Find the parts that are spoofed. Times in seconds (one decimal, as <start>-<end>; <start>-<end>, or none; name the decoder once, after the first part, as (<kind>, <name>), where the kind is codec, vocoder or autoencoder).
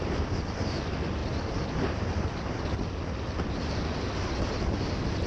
none